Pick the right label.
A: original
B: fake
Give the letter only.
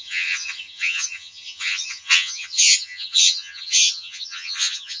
B